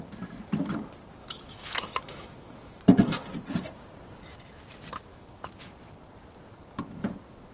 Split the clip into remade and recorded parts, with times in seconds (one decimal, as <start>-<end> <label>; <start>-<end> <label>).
0.0-1.2 recorded; 1.2-2.8 remade; 2.8-5.1 recorded; 5.1-5.7 remade; 5.7-7.5 recorded